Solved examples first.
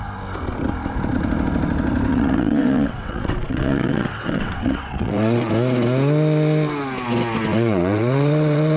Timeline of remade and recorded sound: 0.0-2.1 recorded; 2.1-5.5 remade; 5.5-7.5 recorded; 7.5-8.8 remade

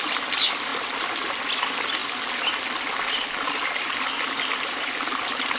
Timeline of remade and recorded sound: 0.0-5.6 recorded

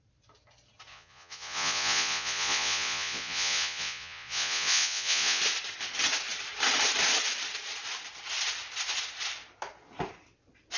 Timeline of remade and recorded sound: 0.0-0.9 recorded; 0.9-5.4 remade; 5.4-10.8 recorded

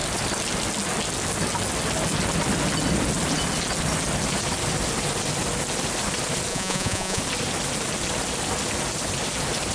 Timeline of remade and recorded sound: 0.0-6.5 recorded; 6.5-7.2 remade; 7.2-9.7 recorded

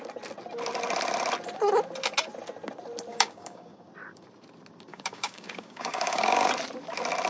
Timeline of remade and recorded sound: 0.0-3.1 recorded; 3.1-3.9 remade; 3.9-4.9 recorded; 4.9-6.5 remade; 6.5-7.3 recorded

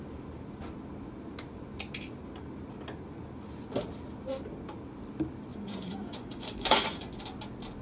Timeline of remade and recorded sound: 0.0-5.5 recorded; 5.5-7.2 remade; 7.2-7.8 recorded

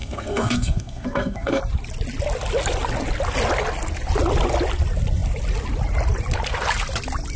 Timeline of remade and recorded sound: 0.0-1.6 remade; 1.6-7.4 recorded